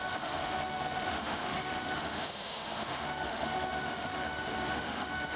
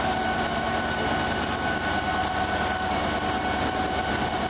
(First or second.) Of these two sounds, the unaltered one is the second